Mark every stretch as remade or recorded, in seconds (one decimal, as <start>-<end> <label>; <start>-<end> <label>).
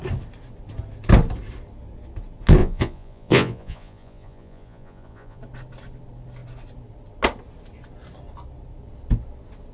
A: 0.0-2.6 recorded; 2.6-5.4 remade; 5.4-9.7 recorded